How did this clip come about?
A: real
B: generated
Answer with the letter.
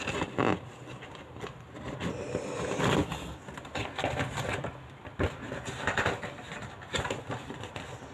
A